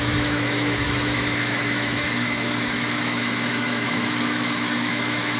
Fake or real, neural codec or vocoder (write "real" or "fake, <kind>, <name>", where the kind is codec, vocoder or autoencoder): fake, autoencoder, DAC-VAE